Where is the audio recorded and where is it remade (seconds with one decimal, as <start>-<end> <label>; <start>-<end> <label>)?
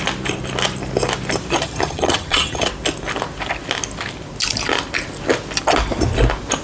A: 0.0-1.6 recorded; 1.6-2.7 remade; 2.7-6.6 recorded